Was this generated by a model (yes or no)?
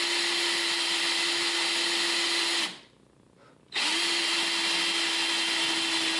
no